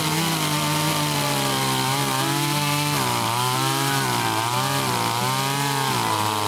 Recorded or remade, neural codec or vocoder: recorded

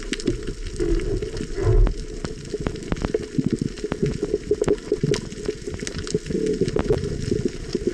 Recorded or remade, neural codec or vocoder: recorded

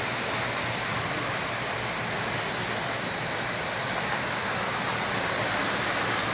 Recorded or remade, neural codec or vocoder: recorded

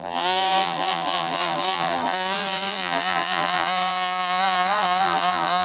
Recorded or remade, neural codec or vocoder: remade, vocoder, BigVGAN v2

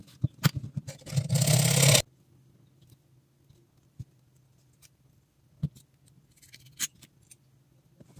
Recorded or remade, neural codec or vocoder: recorded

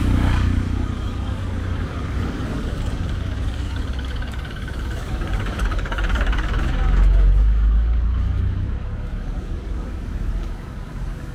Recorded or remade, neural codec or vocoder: remade, codec, DAC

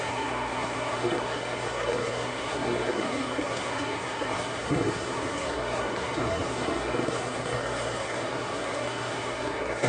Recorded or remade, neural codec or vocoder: remade, codec, SNAC